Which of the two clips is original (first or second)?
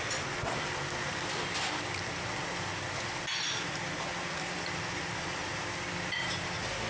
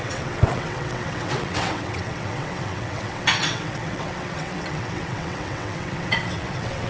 first